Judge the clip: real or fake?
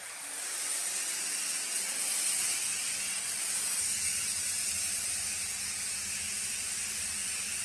real